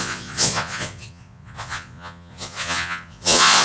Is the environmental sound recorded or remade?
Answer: remade